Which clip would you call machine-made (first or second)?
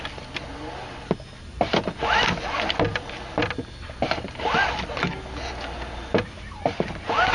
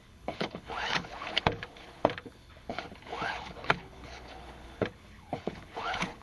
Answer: second